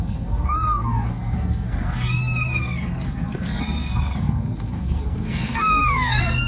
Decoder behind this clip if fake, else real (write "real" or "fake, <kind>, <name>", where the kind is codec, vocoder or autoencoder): fake, codec, SNAC